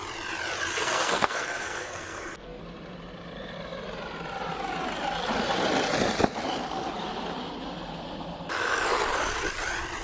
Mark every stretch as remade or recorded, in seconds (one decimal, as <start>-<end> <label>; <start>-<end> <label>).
0.0-0.7 recorded; 0.7-2.6 remade; 2.6-10.0 recorded